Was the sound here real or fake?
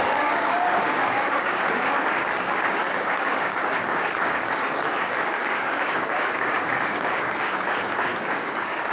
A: fake